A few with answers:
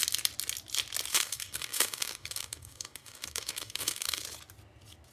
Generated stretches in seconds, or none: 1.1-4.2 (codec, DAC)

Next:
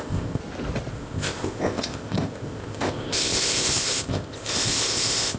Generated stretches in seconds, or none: 0.0-0.4 (codec, ZipCodec); 0.9-5.4

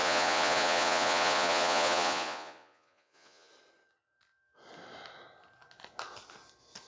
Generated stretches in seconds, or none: 0.0-3.5 (vocoder, Vocos)

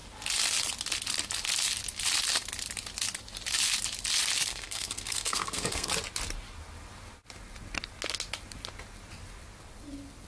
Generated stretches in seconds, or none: 4.5-5.9 (codec, SNAC)